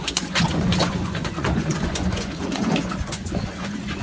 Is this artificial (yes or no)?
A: yes